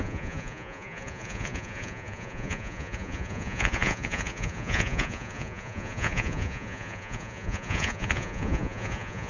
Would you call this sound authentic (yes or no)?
no